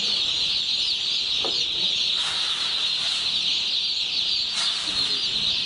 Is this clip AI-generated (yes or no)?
no